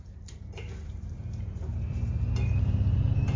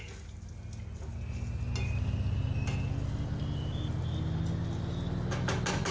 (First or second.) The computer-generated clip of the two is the first